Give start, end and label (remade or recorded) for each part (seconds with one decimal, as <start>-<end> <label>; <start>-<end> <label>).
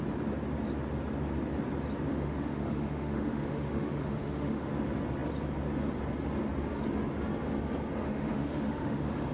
0.0-2.1 recorded; 2.1-4.7 remade; 4.7-8.0 recorded; 8.0-9.3 remade